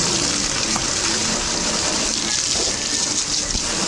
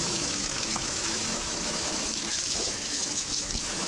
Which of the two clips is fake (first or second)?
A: second